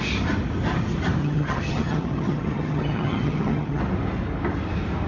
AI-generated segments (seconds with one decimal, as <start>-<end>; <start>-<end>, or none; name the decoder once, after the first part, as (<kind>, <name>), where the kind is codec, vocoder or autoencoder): 1.2-3.8 (vocoder, HiFi-GAN)